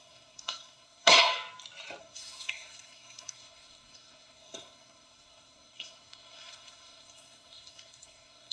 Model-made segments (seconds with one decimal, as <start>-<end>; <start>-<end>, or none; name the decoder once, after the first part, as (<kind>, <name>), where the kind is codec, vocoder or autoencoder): 0.0-1.3 (codec, SNAC); 2.0-8.5

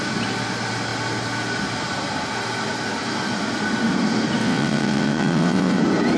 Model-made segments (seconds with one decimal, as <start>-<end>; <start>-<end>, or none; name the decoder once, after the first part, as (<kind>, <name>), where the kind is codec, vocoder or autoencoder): 4.4-5.8 (vocoder, WaveNeXt)

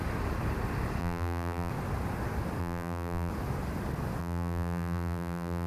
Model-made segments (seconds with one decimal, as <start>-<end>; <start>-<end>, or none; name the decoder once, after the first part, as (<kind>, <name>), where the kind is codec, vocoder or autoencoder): 1.0-1.7 (vocoder, BigVGAN v2); 2.6-3.3; 4.2-5.7

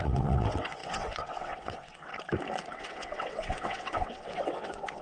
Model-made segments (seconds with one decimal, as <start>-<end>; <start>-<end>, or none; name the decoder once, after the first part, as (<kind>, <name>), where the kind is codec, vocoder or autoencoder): 0.0-2.1 (vocoder, WaveNeXt); 2.8-5.0

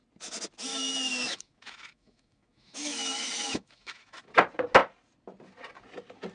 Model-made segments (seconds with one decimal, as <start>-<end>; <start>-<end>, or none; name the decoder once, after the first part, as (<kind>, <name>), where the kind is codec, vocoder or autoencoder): 0.7-4.2 (autoencoder, DAC-VAE)

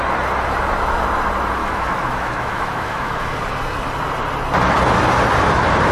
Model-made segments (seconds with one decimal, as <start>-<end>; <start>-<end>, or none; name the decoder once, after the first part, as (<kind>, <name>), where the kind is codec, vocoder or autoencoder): 1.6-3.2 (autoencoder, DAC-VAE)

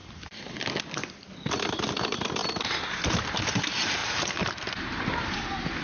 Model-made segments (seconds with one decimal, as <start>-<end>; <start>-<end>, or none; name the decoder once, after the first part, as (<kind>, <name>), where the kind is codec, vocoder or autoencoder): 1.5-2.4 (vocoder, BigVGAN v2); 3.0-5.8

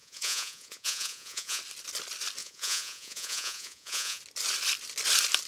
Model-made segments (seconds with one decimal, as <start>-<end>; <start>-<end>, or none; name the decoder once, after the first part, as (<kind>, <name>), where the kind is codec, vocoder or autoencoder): 0.0-1.6 (vocoder, Vocos); 2.4-4.2